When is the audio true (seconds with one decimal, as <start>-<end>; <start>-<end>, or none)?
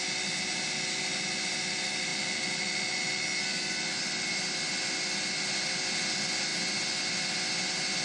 0.0-8.0